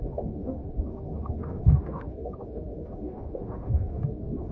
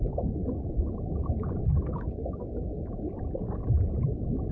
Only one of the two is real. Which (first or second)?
second